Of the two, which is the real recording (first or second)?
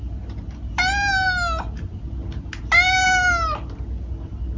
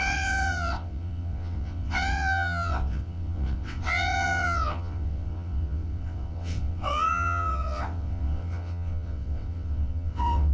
first